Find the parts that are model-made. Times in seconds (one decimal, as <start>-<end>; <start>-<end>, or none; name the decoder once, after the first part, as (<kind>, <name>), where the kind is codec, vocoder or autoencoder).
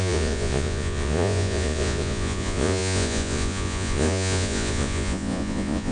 0.0-5.9 (vocoder, Vocos)